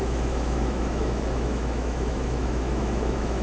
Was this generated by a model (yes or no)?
yes